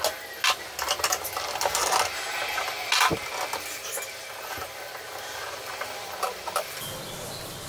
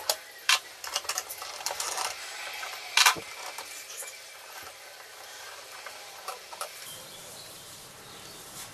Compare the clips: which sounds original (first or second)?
first